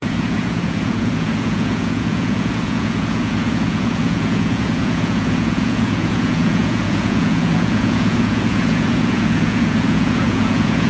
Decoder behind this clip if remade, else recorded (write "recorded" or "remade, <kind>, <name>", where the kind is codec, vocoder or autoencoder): remade, vocoder, Vocos